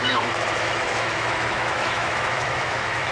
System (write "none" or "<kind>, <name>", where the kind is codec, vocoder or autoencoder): autoencoder, DAC-VAE